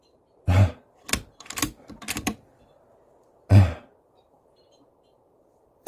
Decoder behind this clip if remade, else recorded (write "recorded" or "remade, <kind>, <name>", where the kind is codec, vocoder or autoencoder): remade, vocoder, BigVGAN v2